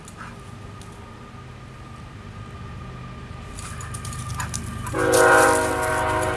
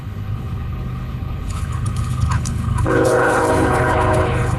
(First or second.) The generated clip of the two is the second